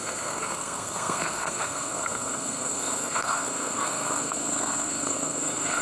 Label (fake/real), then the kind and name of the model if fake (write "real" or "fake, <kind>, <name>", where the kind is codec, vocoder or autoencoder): fake, codec, SNAC